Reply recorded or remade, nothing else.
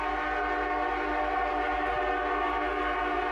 recorded